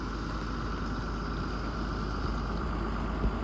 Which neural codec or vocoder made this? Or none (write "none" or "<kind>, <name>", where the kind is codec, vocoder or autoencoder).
none